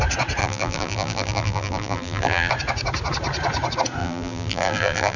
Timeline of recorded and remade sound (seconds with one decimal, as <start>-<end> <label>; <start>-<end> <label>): 0.0-0.4 recorded; 0.4-2.5 remade; 2.5-4.0 recorded; 4.0-5.2 remade